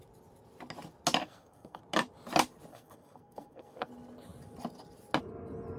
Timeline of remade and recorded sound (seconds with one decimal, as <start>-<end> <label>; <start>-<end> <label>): 0.0-1.2 recorded; 1.2-1.8 remade; 1.8-2.7 recorded; 2.7-3.9 remade; 3.9-5.8 recorded